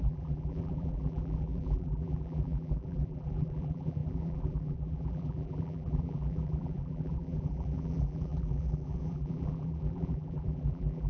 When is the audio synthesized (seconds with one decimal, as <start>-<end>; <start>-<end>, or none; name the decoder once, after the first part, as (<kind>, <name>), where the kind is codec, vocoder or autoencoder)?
0.0-11.1 (vocoder, BigVGAN v2)